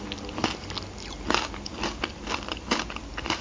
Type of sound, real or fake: real